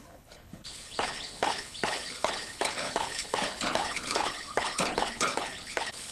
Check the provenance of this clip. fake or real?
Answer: fake